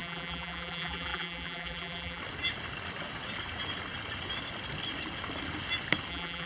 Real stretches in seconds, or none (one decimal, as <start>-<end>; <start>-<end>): 2.2-6.1